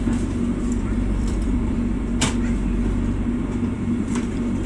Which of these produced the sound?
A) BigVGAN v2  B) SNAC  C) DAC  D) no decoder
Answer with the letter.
A